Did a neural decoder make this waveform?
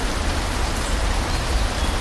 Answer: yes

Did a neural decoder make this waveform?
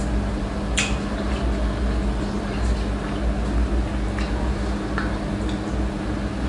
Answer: no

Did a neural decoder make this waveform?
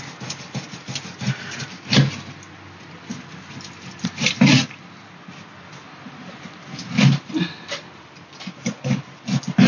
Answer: no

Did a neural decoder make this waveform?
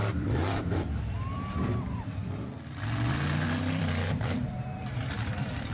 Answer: yes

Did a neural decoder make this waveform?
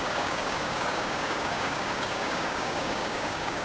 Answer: yes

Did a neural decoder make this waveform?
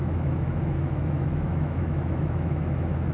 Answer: yes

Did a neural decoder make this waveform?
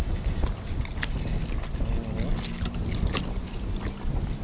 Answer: no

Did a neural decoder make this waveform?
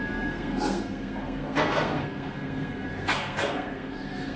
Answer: yes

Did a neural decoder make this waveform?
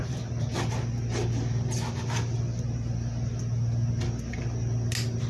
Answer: no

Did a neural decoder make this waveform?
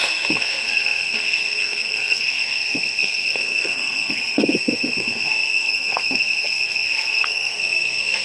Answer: yes